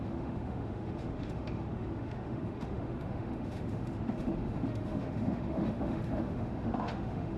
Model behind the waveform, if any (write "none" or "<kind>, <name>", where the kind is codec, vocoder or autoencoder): autoencoder, DAC-VAE